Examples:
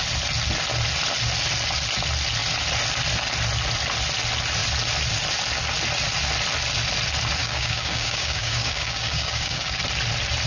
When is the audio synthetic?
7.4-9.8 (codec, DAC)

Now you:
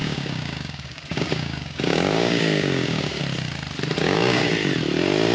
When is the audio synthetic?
0.0-3.2 (codec, DAC); 4.0-4.5

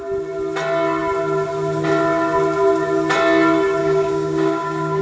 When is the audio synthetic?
3.8-5.0 (codec, DAC)

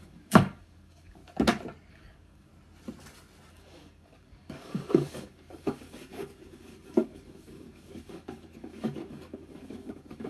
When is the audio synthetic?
0.0-1.2 (codec, DAC); 1.9-2.5; 3.5-10.3